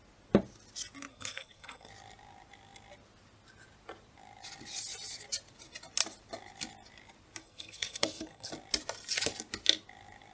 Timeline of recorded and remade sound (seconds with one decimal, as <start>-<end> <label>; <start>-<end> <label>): 0.0-1.1 recorded; 1.1-1.9 remade; 1.9-7.4 recorded; 7.4-8.5 remade; 8.5-10.3 recorded